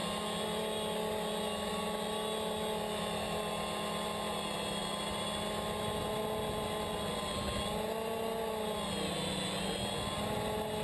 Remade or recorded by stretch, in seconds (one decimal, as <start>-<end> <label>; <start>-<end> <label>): 0.0-10.8 recorded